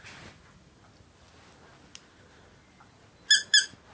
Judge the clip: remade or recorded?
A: recorded